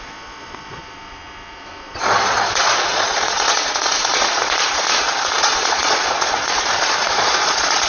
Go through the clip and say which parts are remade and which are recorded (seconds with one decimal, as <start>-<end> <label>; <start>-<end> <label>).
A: 0.0-7.9 remade